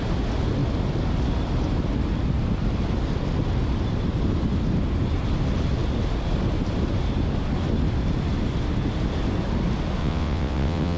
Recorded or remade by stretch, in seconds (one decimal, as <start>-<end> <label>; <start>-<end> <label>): 0.0-10.0 recorded; 10.0-11.0 remade